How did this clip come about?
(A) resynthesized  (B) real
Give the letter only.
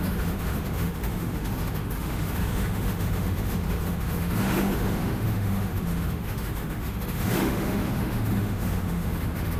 A